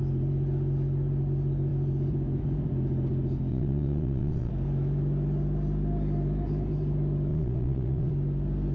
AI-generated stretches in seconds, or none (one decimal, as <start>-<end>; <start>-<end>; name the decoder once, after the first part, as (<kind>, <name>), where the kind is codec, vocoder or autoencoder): 3.5-4.5 (vocoder, Vocos); 7.3-8.1